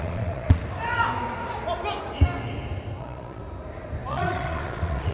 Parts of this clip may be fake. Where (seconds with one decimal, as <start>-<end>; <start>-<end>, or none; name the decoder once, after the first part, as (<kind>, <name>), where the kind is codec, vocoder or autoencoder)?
0.0-0.6 (vocoder, Vocos); 3.0-3.4; 4.1-5.1